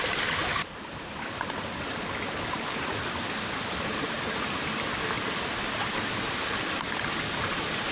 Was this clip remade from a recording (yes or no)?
no